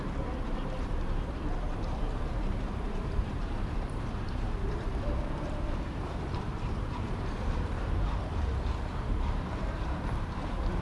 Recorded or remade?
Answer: remade